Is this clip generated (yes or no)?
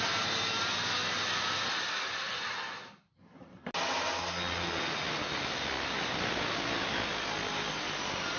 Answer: no